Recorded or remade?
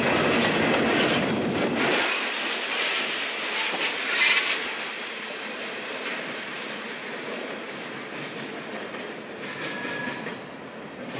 recorded